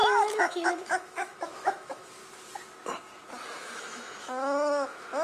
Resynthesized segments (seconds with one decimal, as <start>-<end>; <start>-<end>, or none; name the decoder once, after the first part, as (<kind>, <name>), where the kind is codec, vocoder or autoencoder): 0.0-2.2 (autoencoder, DAC-VAE); 3.5-5.2